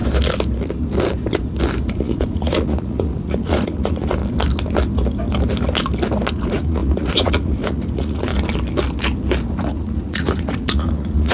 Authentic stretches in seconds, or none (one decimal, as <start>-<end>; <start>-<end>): 0.0-1.9; 4.2-6.3; 8.3-9.5

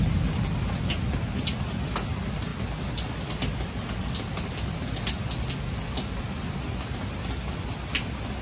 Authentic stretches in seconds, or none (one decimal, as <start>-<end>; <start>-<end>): 0.0-8.4

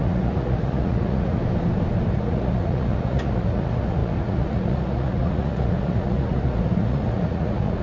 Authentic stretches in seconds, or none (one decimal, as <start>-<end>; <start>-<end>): 1.4-2.1

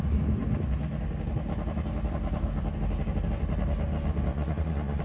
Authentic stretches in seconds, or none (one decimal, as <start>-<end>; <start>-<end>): 0.0-4.3

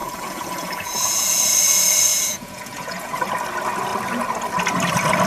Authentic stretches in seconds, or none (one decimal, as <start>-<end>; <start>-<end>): 1.4-2.1; 3.2-5.3